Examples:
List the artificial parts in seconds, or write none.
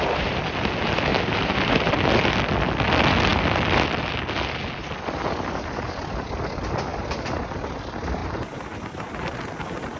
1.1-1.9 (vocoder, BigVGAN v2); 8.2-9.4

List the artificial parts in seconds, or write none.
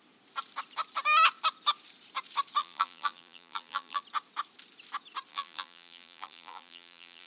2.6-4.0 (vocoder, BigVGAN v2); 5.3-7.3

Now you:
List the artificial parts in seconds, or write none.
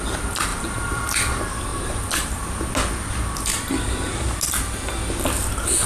0.5-1.0 (vocoder, BigVGAN v2); 1.7-2.4; 3.5-4.1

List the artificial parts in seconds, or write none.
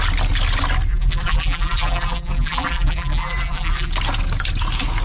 0.9-3.9 (vocoder, BigVGAN v2)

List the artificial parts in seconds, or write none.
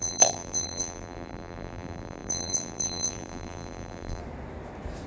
0.0-4.2 (vocoder, BigVGAN v2)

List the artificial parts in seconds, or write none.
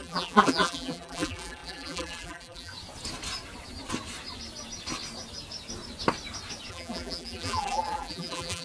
0.0-2.7 (vocoder, BigVGAN v2); 6.7-8.6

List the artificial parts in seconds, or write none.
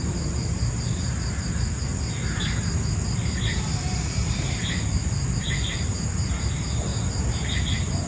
0.0-1.9 (vocoder, BigVGAN v2); 5.4-6.9; 7.6-8.1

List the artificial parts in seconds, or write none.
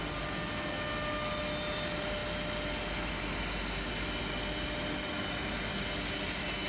none